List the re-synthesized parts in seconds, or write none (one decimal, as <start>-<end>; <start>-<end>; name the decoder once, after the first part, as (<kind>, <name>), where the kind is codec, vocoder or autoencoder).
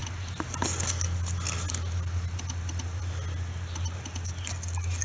none